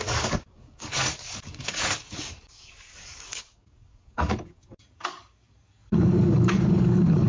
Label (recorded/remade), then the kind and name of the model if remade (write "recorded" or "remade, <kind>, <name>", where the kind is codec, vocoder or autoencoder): remade, codec, DAC